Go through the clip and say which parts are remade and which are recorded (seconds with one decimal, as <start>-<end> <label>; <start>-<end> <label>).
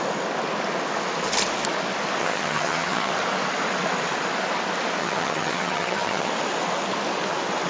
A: 0.0-2.2 recorded; 2.2-3.1 remade; 3.1-5.0 recorded; 5.0-6.3 remade; 6.3-7.7 recorded